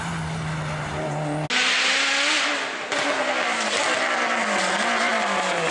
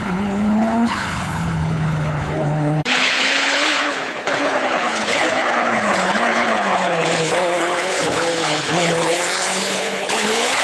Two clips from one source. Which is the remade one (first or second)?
second